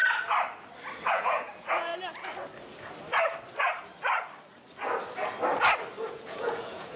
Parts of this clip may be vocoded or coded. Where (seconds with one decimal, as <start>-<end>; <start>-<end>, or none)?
1.1-1.9; 6.1-7.0